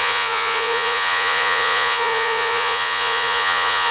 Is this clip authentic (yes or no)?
no